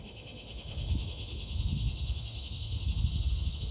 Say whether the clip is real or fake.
fake